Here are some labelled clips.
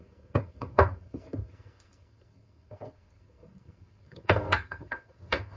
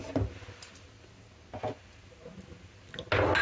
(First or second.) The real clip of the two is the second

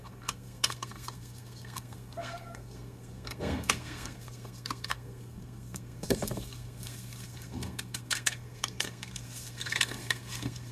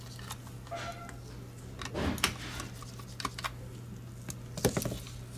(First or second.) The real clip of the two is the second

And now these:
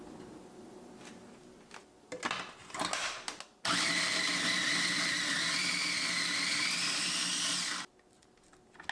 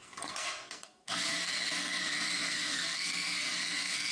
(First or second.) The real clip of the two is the first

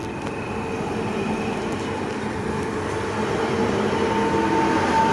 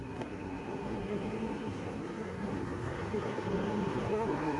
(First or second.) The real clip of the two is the first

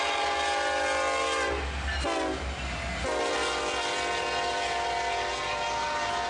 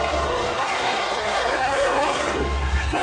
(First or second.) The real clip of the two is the first